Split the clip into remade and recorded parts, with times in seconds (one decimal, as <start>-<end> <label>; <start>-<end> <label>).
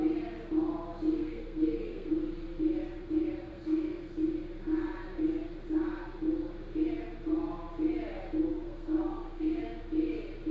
0.0-1.2 recorded; 1.2-2.1 remade; 2.1-3.5 recorded; 3.5-4.1 remade; 4.1-8.5 recorded; 8.5-9.6 remade; 9.6-10.5 recorded